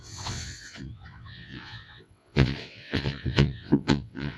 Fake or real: fake